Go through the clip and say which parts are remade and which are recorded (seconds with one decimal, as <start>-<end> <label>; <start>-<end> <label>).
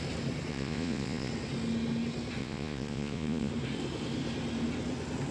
0.0-0.5 recorded; 0.5-1.3 remade; 1.3-2.4 recorded; 2.4-3.5 remade; 3.5-5.3 recorded